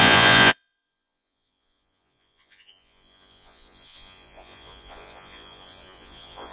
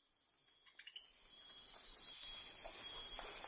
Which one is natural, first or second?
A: second